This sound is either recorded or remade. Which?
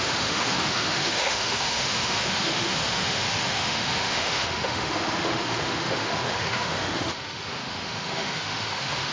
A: remade